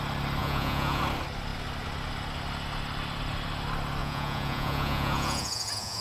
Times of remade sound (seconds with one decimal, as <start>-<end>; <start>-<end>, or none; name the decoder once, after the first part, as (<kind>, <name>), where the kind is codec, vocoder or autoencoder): 0.4-1.0 (vocoder, Vocos); 4.0-6.0

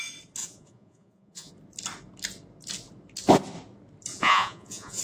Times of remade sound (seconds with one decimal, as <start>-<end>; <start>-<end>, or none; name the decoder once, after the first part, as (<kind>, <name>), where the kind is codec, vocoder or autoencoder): 0.4-1.5 (vocoder, Vocos); 4.1-5.0

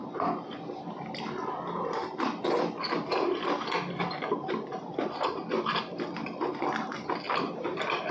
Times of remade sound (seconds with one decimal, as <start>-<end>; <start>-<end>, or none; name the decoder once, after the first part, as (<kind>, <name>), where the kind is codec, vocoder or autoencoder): none

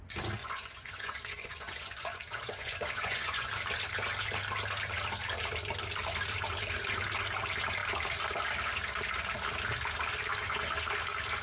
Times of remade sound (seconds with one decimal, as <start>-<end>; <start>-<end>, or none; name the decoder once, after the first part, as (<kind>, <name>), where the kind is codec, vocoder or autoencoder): 0.4-3.5 (vocoder, Vocos)

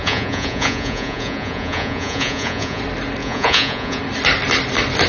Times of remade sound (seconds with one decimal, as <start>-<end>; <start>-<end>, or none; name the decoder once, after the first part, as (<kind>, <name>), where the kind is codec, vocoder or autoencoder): 0.0-2.8 (vocoder, Vocos); 3.2-4.0

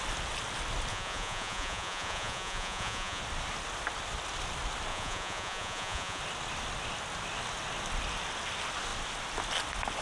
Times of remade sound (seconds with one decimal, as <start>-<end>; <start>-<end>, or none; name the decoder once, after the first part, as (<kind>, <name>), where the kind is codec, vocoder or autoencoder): 0.9-3.2 (vocoder, Vocos); 4.9-6.2

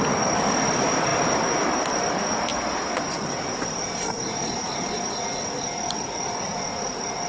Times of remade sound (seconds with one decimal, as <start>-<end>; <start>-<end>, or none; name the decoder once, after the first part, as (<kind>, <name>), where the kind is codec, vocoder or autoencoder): none

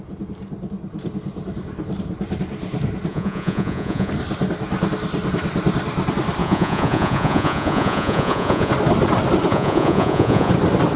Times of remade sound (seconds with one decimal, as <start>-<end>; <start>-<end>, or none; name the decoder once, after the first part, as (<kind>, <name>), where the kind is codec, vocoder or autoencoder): 3.1-4.1 (vocoder, Vocos); 6.4-8.7; 9.5-10.5